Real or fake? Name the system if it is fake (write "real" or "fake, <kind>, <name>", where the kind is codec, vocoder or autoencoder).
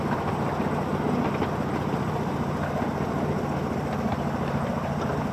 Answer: real